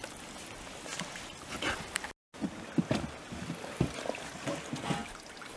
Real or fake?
real